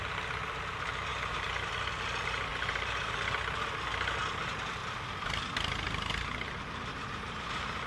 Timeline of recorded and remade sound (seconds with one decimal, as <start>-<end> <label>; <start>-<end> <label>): 0.0-1.1 recorded; 1.1-1.7 remade; 1.7-2.5 recorded; 2.5-3.1 remade; 3.1-6.9 recorded; 6.9-7.9 remade